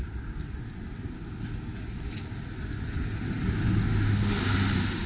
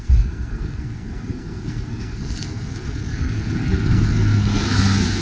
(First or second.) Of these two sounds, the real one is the first